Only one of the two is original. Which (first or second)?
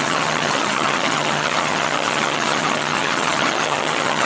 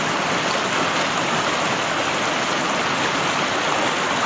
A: second